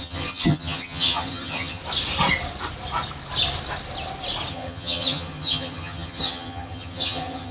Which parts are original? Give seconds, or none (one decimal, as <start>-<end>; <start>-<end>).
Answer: 1.8-4.5